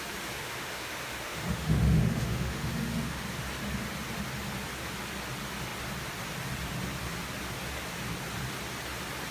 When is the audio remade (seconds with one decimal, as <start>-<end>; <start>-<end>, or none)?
0.4-3.2